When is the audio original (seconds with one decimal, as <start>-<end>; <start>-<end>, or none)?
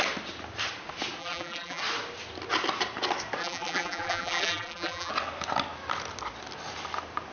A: 0.0-1.2; 1.8-3.4; 5.1-7.3